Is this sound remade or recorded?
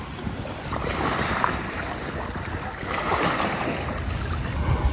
recorded